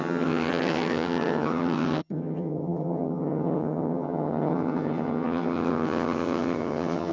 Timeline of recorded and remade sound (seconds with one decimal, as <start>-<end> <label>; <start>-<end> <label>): 0.0-7.1 remade